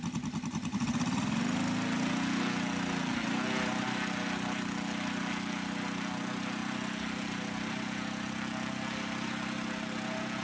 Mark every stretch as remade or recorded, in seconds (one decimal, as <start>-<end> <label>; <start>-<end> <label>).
0.0-10.4 recorded